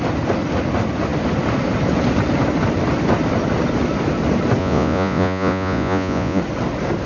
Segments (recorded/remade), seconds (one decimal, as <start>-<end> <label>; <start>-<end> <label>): 0.0-4.6 recorded; 4.6-6.4 remade; 6.4-7.1 recorded

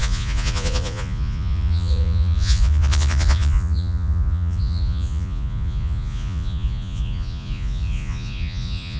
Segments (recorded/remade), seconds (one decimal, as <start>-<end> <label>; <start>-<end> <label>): 0.0-9.0 remade

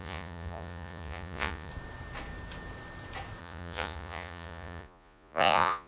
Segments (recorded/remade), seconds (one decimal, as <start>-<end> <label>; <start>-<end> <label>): 0.0-1.7 remade; 1.7-3.4 recorded; 3.4-5.9 remade

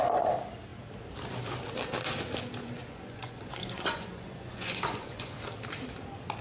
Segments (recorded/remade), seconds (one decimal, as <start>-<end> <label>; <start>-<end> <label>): 0.0-2.6 recorded; 2.6-5.3 remade; 5.3-6.4 recorded

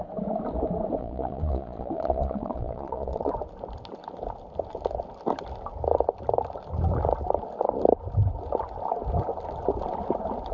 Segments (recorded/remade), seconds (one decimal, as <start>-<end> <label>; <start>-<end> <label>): 0.0-1.0 recorded; 1.0-3.3 remade; 3.3-10.5 recorded